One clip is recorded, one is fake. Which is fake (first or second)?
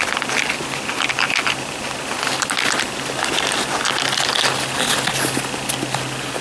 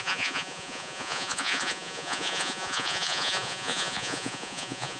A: second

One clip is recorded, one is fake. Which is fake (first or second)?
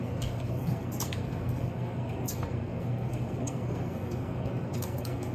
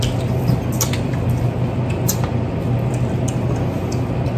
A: first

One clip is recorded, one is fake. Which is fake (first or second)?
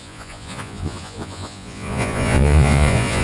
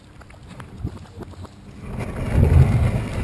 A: first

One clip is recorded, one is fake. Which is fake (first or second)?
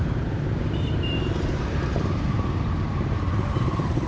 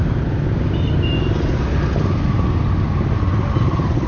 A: first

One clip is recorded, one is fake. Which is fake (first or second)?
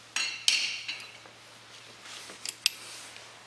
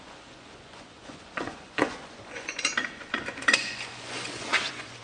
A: second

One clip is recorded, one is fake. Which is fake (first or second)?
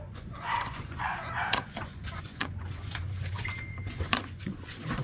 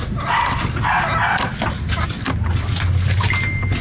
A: first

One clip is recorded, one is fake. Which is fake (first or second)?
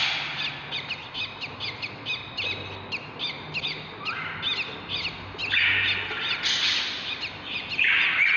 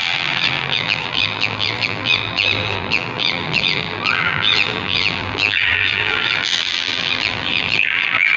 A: second